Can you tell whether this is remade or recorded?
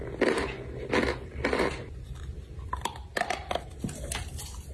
recorded